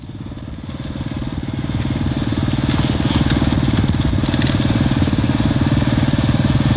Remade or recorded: recorded